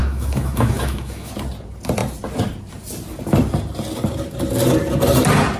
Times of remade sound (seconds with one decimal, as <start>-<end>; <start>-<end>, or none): 0.0-1.3